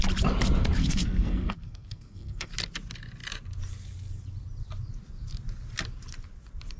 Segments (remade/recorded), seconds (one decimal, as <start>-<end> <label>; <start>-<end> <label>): 0.0-0.8 recorded; 0.8-2.5 remade; 2.5-6.8 recorded